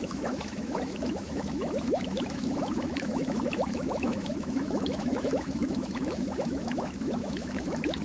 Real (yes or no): no